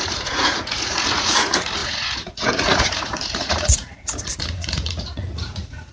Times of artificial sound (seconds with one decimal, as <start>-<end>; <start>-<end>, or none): 0.0-5.9